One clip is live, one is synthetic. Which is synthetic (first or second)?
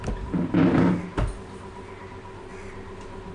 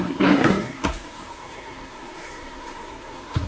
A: second